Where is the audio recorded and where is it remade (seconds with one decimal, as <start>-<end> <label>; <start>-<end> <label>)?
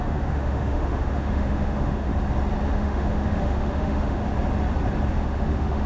0.0-2.1 remade; 2.1-2.7 recorded; 2.7-4.2 remade; 4.2-5.1 recorded; 5.1-5.9 remade